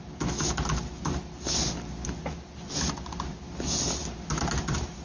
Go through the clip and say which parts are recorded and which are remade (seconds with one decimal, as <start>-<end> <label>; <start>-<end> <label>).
0.0-5.0 recorded